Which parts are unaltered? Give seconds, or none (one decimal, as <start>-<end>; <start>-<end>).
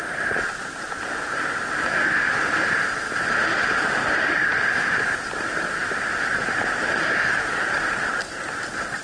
0.0-9.0